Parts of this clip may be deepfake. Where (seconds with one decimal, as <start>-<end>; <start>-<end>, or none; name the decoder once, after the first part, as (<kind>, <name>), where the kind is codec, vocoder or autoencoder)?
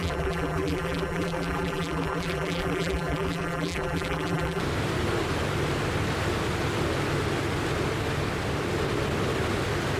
0.0-4.6 (vocoder, BigVGAN v2)